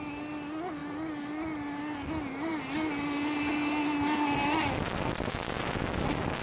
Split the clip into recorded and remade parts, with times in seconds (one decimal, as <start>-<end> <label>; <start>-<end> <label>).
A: 0.0-6.4 recorded